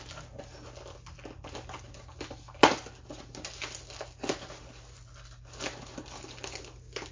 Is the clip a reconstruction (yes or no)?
no